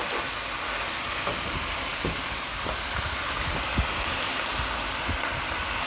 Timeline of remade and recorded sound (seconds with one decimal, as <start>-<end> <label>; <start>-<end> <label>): 0.0-5.9 recorded